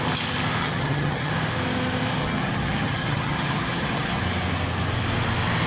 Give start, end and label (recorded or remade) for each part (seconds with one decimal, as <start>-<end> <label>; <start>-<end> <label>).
0.0-0.6 recorded; 0.6-1.3 remade; 1.3-2.2 recorded; 2.2-4.2 remade; 4.2-5.7 recorded